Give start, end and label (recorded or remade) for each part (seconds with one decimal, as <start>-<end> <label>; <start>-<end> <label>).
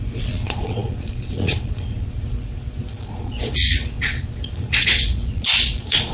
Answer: 0.0-6.1 remade